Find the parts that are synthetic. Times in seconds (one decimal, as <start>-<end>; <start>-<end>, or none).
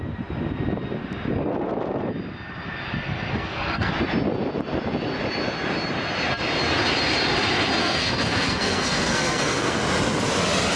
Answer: 3.3-3.9; 7.8-9.8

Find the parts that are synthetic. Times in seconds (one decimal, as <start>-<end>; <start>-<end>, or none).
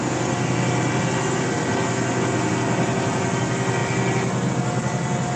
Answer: none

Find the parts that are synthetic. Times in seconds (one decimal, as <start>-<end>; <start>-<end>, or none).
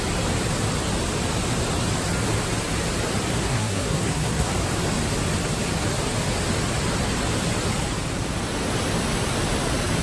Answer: 3.3-4.5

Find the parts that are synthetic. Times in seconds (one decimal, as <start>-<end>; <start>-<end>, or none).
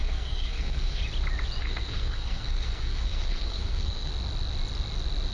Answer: 0.0-1.0; 1.6-4.1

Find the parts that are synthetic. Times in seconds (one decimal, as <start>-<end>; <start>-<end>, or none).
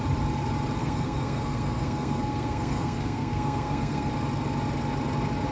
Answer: 0.8-4.1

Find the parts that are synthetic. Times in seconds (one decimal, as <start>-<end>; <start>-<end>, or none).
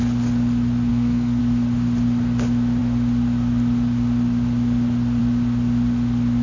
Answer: 0.9-1.4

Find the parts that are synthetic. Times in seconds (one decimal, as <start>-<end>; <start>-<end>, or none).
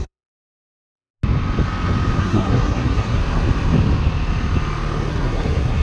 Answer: 0.0-1.1; 2.2-3.2; 5.1-5.8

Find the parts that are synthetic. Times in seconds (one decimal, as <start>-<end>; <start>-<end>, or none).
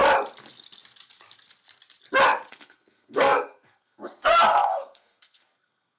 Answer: 2.5-6.0